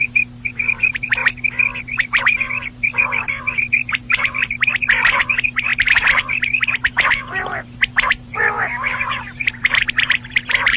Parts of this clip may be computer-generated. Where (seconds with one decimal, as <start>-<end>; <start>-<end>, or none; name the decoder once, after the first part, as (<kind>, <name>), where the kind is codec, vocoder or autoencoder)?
0.0-1.2 (vocoder, BigVGAN v2); 1.8-4.7; 5.2-10.8

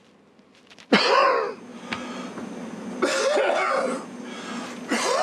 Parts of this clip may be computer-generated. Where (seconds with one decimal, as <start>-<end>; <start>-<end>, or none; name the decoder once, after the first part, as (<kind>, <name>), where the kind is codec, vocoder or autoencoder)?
none

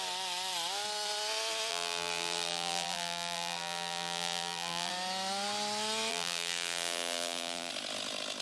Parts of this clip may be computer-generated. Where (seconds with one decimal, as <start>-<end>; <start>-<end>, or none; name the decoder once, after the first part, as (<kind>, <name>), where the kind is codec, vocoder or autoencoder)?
1.7-4.9 (vocoder, BigVGAN v2); 6.1-7.7